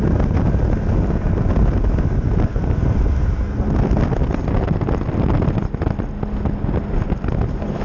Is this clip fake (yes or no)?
no